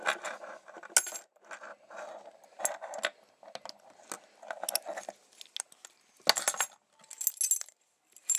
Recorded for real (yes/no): yes